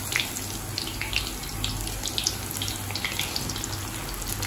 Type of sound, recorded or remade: recorded